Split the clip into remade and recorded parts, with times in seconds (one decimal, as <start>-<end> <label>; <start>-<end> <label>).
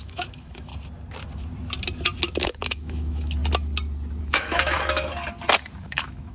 0.0-0.7 remade; 0.7-2.2 recorded; 2.2-3.4 remade; 3.4-4.2 recorded; 4.2-5.1 remade; 5.1-5.8 recorded; 5.8-6.3 remade